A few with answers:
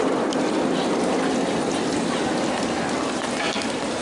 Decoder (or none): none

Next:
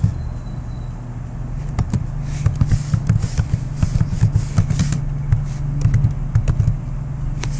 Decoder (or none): none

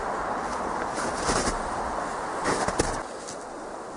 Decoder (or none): none